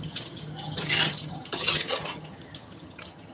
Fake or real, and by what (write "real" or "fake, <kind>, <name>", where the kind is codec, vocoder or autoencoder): fake, vocoder, HiFi-GAN